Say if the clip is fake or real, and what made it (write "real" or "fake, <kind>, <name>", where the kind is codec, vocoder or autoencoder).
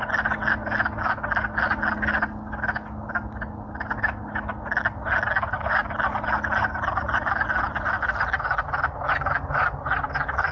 real